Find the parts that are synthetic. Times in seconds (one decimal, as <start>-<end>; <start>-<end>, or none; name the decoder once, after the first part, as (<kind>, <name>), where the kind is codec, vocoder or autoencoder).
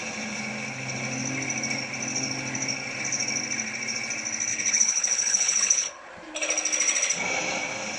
4.5-6.1 (codec, HILCodec)